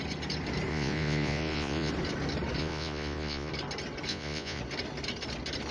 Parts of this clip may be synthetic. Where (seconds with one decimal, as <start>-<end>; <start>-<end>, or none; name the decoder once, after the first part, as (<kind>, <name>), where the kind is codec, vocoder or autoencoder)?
0.7-1.9 (vocoder, Vocos); 2.6-3.5; 4.1-4.6